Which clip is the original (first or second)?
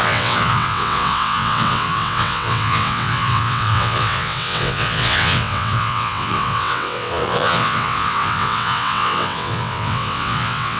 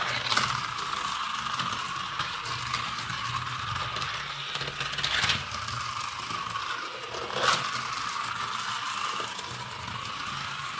second